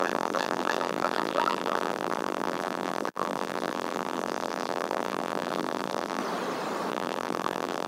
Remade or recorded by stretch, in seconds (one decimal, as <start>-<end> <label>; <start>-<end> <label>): 0.0-6.2 remade; 6.2-6.9 recorded; 6.9-7.9 remade